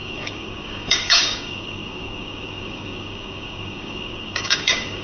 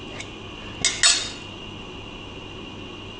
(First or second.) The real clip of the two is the second